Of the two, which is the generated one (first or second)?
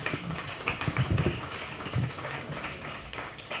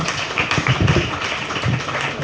first